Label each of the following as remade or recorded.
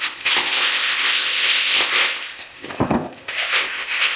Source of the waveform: remade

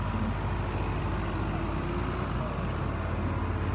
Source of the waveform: recorded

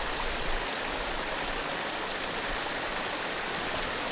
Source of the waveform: recorded